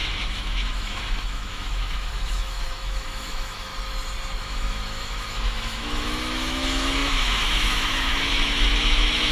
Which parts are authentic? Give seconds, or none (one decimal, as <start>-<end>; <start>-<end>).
3.7-4.4